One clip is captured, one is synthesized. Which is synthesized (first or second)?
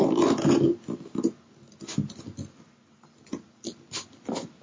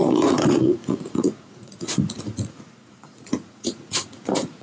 second